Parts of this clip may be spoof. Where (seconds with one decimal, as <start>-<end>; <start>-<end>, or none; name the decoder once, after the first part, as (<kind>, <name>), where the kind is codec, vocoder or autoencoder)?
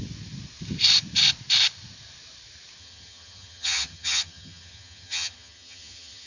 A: 2.8-6.3 (vocoder, HiFi-GAN)